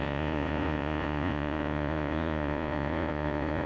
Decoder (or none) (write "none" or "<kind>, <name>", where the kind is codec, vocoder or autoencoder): vocoder, Vocos